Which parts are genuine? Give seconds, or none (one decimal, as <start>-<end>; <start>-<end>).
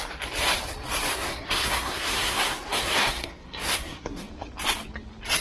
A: 0.0-1.1; 4.3-5.4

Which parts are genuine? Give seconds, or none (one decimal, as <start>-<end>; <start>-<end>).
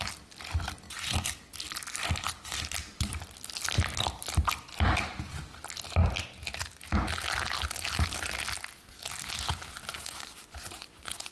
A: 0.0-9.9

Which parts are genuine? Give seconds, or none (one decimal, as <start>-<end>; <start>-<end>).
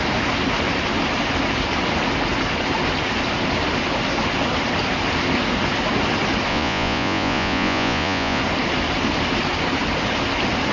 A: 0.0-6.5; 8.4-10.7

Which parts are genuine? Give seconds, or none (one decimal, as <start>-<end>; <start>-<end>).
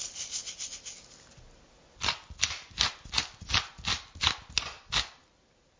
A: 0.0-5.8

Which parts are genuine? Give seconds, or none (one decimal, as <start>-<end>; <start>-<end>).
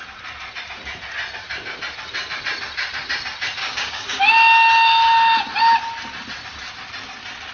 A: 0.0-3.6; 4.2-7.5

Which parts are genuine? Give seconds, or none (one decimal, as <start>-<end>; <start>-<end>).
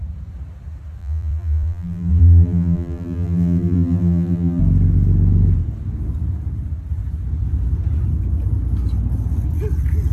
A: 0.0-1.0; 4.6-10.1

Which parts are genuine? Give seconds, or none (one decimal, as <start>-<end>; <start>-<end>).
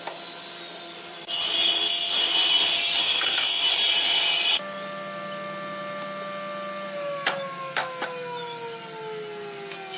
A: 0.0-3.0; 3.6-10.0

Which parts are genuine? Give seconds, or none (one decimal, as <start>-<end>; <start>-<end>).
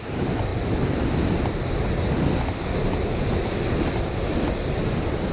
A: 0.0-5.3